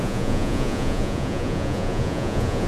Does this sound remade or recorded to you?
remade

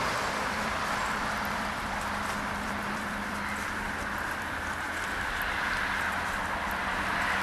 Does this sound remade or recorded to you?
remade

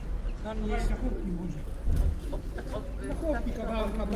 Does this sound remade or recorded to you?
recorded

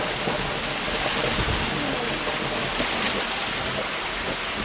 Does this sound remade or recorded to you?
recorded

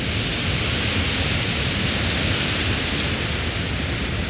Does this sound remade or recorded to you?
recorded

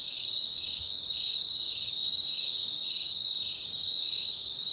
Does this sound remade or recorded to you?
remade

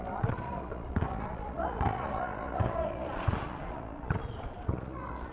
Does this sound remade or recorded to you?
remade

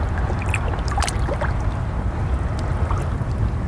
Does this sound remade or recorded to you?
recorded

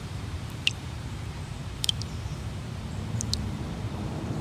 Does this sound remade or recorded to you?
remade